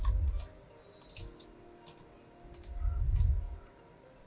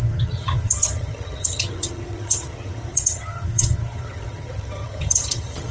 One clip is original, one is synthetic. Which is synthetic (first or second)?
second